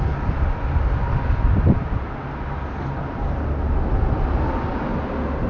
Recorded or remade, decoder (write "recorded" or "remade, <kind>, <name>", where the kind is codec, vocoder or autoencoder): recorded